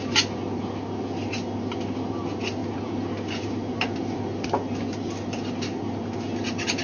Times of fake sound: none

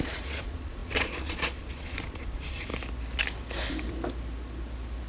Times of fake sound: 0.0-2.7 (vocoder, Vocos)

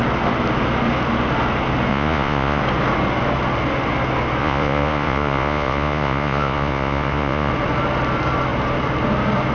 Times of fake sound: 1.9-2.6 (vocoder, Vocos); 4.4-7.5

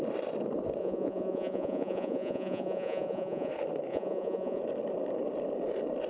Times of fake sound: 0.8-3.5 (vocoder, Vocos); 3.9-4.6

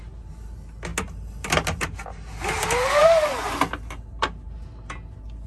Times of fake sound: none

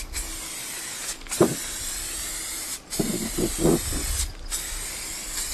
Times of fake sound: none

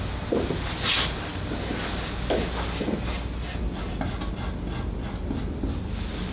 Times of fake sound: none

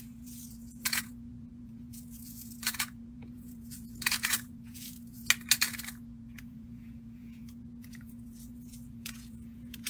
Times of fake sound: 0.0-5.2 (vocoder, Vocos); 6.0-9.9